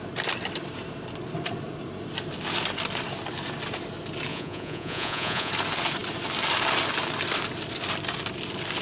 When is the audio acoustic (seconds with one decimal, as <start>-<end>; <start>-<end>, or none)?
0.0-4.3; 5.5-8.8